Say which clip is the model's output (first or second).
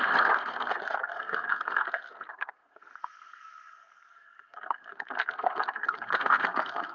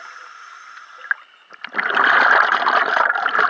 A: first